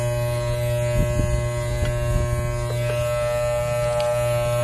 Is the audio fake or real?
real